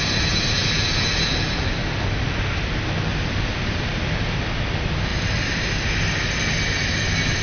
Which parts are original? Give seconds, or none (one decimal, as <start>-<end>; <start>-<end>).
0.0-3.1; 4.0-5.1; 5.7-7.4